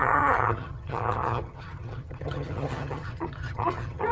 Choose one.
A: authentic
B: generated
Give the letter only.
B